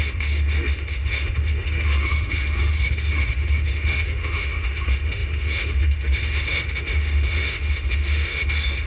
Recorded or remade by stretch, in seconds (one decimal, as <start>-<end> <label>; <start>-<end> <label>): 0.0-8.9 remade